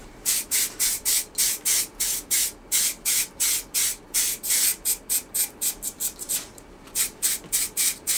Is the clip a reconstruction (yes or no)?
no